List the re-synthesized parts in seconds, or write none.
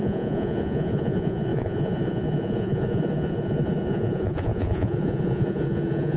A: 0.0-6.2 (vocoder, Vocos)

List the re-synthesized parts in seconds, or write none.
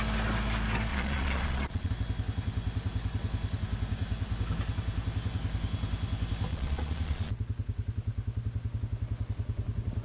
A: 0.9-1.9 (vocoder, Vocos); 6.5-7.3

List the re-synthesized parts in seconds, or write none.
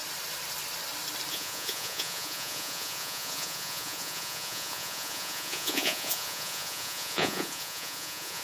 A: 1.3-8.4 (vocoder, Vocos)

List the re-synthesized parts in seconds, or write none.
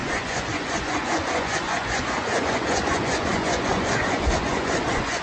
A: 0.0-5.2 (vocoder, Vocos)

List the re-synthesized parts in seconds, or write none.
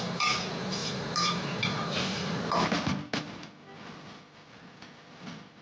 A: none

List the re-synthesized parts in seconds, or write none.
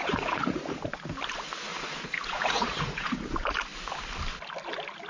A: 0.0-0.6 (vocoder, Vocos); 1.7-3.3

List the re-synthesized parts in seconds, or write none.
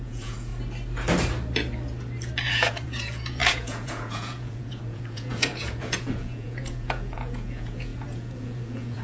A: 0.0-0.5 (vocoder, Vocos); 2.5-9.0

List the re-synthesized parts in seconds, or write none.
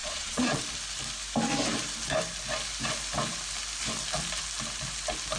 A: 0.0-0.6 (vocoder, Vocos)